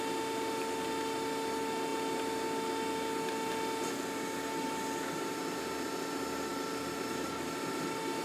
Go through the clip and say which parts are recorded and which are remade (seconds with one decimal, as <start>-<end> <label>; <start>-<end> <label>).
0.0-8.2 recorded